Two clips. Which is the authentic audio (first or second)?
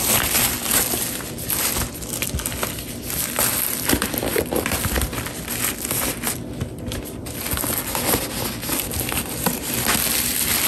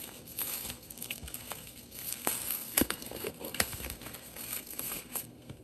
first